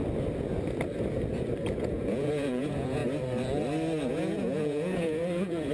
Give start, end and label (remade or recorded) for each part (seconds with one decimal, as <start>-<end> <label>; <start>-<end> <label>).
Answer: 0.0-1.8 recorded; 1.8-3.0 remade; 3.0-4.1 recorded; 4.1-5.7 remade